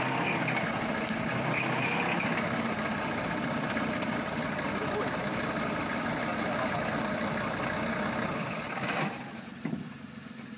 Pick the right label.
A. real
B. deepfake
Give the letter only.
A